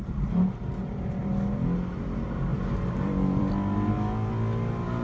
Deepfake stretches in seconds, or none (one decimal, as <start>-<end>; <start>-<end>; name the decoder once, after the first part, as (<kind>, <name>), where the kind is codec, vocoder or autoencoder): 2.5-3.5 (vocoder, BigVGAN v2)